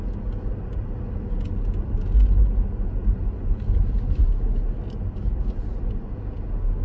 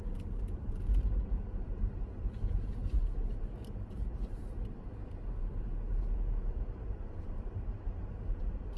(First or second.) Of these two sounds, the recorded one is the first